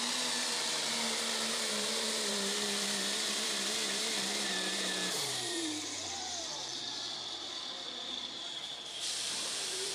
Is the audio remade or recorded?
remade